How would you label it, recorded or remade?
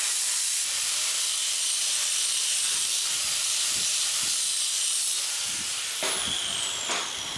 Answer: remade